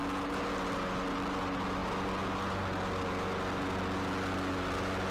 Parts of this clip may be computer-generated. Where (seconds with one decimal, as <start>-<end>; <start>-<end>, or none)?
none